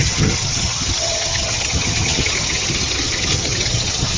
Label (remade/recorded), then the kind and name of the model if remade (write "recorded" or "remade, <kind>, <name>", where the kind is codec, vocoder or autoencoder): remade, vocoder, HiFi-GAN